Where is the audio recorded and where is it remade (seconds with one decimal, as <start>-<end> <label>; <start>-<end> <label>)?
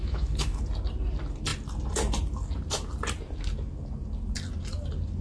0.0-0.6 remade; 0.6-5.2 recorded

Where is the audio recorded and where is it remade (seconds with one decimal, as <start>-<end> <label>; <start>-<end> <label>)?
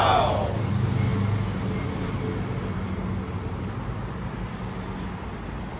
0.0-5.8 recorded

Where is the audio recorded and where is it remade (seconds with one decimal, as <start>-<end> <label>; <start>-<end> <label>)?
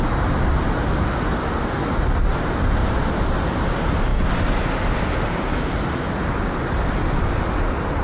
0.0-2.8 recorded; 2.8-3.6 remade; 3.6-8.0 recorded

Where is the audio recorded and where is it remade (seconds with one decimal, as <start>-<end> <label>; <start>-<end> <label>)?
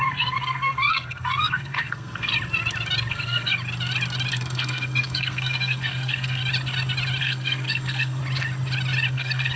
0.0-2.3 remade; 2.3-3.1 recorded; 3.1-3.5 remade; 3.5-4.3 recorded; 4.3-6.4 remade; 6.4-7.2 recorded; 7.2-8.2 remade; 8.2-9.1 recorded; 9.1-9.6 remade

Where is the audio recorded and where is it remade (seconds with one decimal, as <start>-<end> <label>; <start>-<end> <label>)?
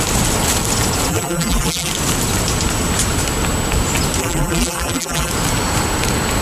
0.0-1.1 recorded; 1.1-1.9 remade; 1.9-4.2 recorded; 4.2-5.3 remade; 5.3-6.4 recorded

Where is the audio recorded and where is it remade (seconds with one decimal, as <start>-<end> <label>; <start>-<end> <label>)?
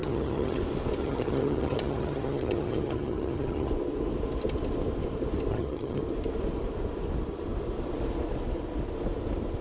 0.0-0.6 remade; 0.6-1.0 recorded; 1.0-3.7 remade; 3.7-5.5 recorded; 5.5-6.0 remade; 6.0-9.6 recorded